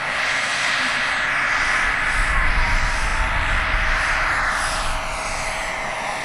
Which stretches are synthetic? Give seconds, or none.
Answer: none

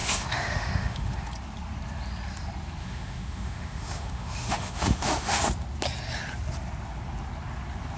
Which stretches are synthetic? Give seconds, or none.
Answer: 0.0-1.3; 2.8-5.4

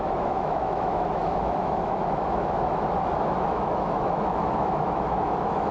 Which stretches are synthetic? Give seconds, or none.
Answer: 0.0-5.7